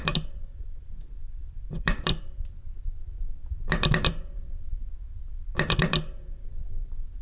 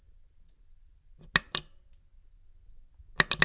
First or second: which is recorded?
second